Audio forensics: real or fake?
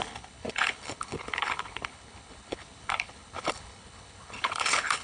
fake